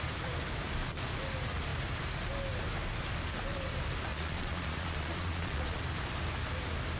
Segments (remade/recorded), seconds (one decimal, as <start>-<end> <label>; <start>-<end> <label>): 0.0-4.1 recorded; 4.1-5.8 remade; 5.8-7.0 recorded